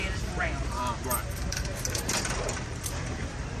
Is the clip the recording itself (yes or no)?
no